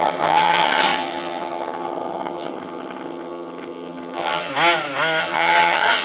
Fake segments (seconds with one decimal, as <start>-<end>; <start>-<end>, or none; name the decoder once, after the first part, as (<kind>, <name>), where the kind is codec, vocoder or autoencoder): 0.0-4.5 (vocoder, HiFi-GAN); 5.2-6.0